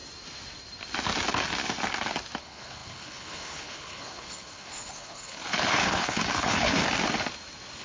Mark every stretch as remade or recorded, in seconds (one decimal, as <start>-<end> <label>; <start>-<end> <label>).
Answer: 0.0-2.4 recorded; 2.4-6.8 remade; 6.8-7.8 recorded